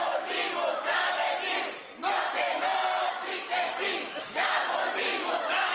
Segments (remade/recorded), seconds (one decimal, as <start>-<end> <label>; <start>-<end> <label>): 0.0-0.7 recorded; 0.7-1.3 remade; 1.3-2.0 recorded; 2.0-2.6 remade; 2.6-3.0 recorded; 3.0-5.7 remade